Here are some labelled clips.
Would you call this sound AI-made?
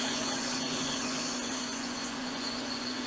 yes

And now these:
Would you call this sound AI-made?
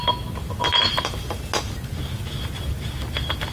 no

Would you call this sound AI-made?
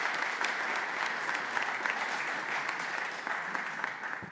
no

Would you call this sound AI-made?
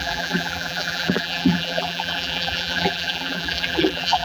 yes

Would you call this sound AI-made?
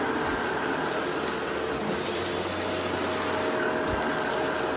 no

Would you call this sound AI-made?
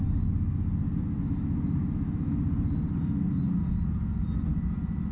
no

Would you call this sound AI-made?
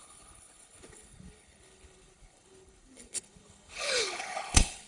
yes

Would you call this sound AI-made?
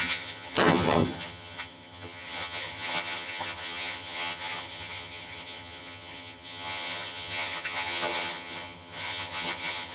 yes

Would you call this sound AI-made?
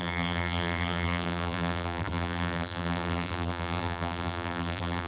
yes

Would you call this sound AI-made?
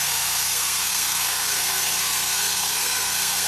yes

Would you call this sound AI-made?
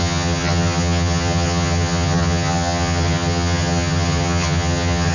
yes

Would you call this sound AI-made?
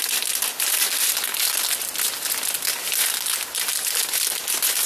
no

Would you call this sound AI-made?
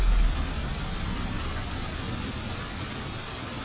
no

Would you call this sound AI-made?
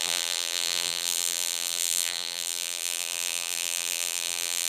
yes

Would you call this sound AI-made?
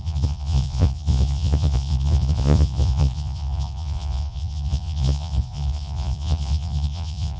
yes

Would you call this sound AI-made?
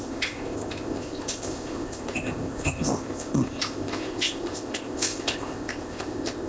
yes